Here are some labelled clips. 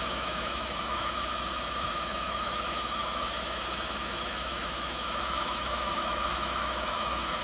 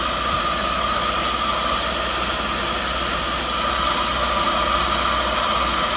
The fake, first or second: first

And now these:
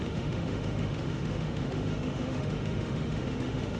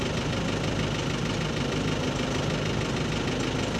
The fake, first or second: first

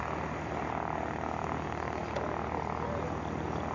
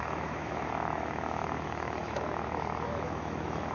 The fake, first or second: second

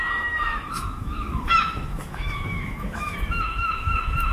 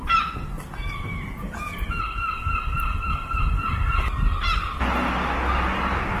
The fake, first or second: first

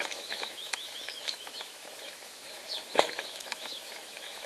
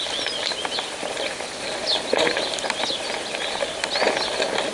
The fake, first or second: first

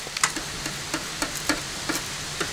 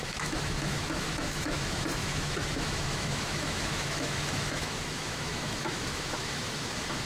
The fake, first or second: second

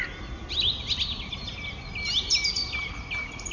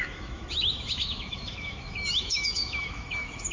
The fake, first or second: second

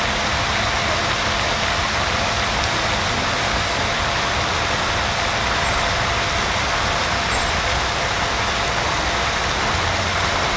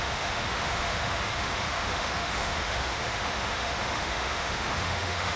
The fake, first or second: second